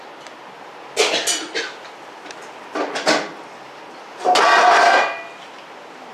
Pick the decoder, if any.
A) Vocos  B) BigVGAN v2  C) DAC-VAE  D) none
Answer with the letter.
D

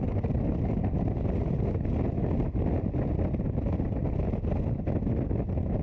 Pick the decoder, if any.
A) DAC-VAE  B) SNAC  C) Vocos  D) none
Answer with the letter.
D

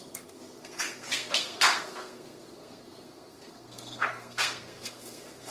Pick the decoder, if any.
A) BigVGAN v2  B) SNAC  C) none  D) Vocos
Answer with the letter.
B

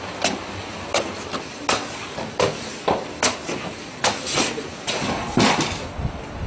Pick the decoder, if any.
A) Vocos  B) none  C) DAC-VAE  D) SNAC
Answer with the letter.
B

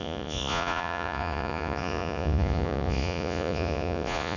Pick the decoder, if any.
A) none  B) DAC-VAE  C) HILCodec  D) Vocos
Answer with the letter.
D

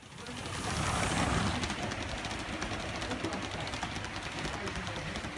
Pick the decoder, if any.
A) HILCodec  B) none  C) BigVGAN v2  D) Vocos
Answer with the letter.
B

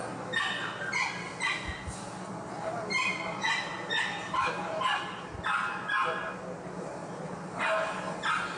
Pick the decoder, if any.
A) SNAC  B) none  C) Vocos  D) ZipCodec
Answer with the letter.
B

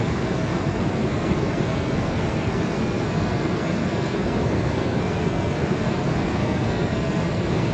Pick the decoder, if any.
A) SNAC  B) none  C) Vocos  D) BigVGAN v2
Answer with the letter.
A